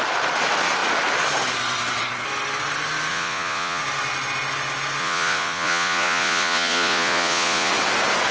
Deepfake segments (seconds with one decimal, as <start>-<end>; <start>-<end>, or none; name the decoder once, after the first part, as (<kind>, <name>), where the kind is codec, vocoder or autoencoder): 3.1-3.8 (vocoder, Vocos); 5.0-7.7